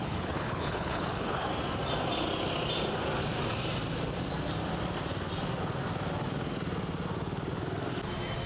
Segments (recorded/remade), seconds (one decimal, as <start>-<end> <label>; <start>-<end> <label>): 0.0-1.5 remade; 1.5-8.5 recorded